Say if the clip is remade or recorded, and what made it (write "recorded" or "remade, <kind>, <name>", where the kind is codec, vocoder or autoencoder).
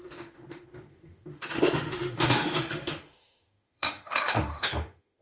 remade, autoencoder, DAC-VAE